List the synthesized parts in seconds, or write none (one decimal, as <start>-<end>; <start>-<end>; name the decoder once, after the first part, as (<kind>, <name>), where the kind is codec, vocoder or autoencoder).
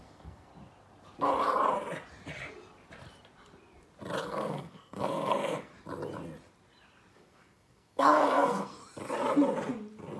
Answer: 0.0-0.5 (codec, SNAC); 4.2-5.7; 7.1-8.8